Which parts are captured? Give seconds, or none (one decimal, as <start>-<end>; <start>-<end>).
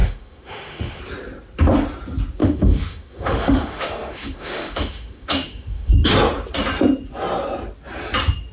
1.0-2.4; 5.9-8.5